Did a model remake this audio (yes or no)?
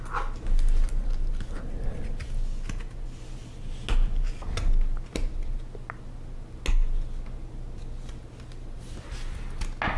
no